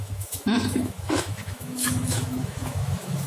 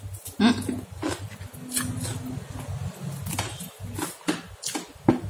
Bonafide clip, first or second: second